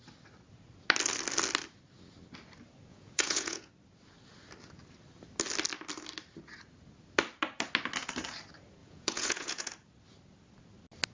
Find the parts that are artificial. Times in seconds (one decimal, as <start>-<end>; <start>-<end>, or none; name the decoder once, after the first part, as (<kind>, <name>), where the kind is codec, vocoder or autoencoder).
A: 2.9-3.7 (vocoder, Vocos); 8.8-9.7